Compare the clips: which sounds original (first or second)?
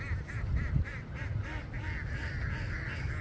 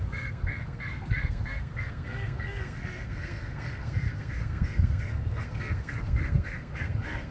first